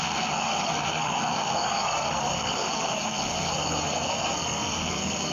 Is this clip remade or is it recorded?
remade